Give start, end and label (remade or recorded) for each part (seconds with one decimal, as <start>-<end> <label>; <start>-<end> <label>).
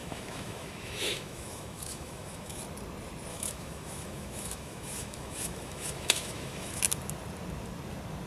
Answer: 0.0-2.6 remade; 2.6-3.3 recorded; 3.3-6.8 remade; 6.8-8.3 recorded